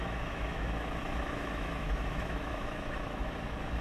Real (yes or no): no